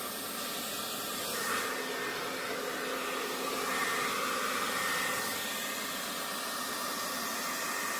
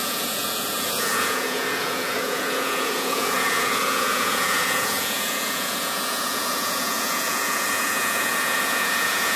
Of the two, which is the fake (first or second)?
second